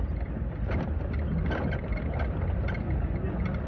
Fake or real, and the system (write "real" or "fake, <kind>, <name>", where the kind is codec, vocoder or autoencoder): real